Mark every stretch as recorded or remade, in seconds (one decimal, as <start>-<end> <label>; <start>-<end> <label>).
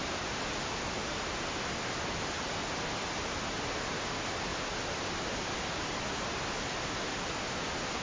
0.0-8.0 recorded